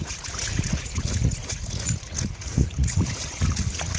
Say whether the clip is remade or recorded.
remade